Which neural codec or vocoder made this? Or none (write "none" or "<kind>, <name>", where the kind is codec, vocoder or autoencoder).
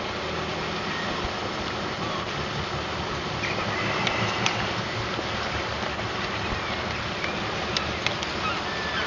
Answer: none